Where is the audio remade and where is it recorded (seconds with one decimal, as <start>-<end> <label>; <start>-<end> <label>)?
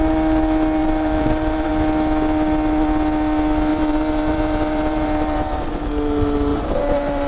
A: 0.0-0.8 recorded; 0.8-1.7 remade; 1.7-3.7 recorded; 3.7-5.6 remade; 5.6-6.5 recorded; 6.5-7.3 remade